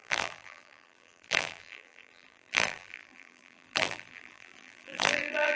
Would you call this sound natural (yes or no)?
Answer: no